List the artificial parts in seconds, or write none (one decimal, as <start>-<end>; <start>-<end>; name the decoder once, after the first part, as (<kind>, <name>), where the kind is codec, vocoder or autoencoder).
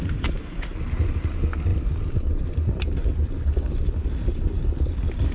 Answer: 1.7-5.3 (vocoder, BigVGAN v2)